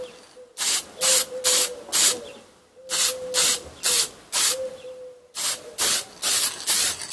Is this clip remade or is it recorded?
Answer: recorded